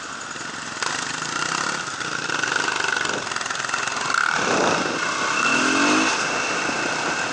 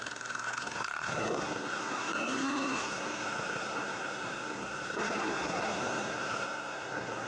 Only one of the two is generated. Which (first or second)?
second